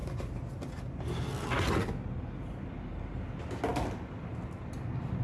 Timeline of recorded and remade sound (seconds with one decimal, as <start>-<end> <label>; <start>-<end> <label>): 0.0-5.2 recorded